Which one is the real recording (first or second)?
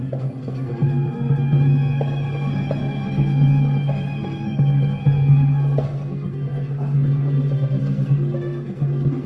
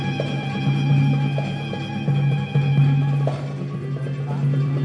second